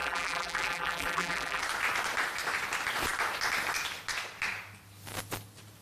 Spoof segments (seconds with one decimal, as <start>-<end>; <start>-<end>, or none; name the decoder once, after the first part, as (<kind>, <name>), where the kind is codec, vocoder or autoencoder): 0.0-1.6 (vocoder, BigVGAN v2)